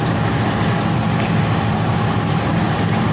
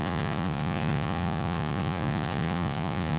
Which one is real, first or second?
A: first